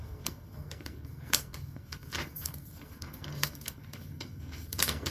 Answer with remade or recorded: remade